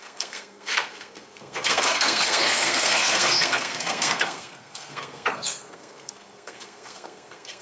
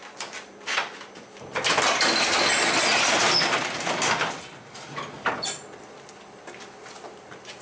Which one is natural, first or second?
second